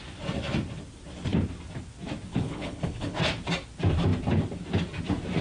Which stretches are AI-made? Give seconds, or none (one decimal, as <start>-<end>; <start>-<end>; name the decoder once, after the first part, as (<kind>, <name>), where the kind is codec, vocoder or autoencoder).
2.3-3.2 (codec, HILCodec)